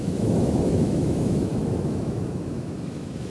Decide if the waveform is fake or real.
fake